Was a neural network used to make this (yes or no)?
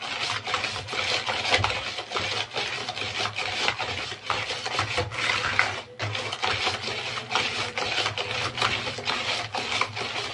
no